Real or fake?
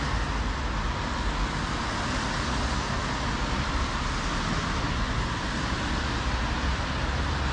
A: real